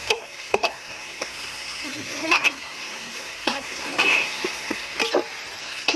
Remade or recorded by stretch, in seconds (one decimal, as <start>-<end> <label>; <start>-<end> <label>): 0.0-5.0 remade; 5.0-5.6 recorded; 5.6-6.0 remade